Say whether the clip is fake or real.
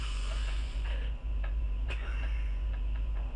fake